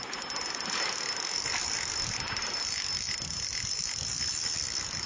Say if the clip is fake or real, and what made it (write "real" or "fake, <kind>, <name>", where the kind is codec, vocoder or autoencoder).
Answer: real